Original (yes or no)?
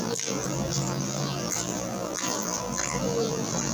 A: no